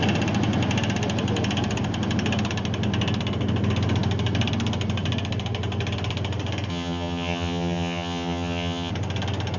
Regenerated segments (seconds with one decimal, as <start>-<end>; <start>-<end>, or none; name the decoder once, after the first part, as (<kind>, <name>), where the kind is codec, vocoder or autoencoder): 6.7-8.9 (vocoder, HiFi-GAN)